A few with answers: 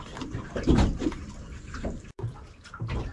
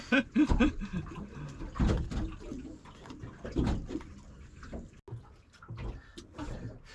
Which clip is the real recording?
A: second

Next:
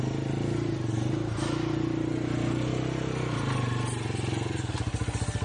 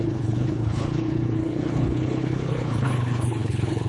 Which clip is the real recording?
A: first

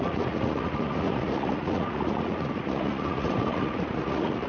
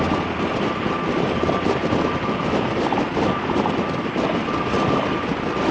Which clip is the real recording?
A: second